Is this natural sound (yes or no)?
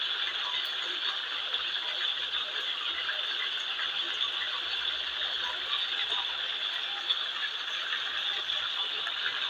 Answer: yes